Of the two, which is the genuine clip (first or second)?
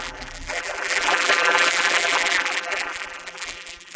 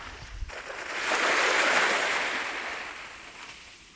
second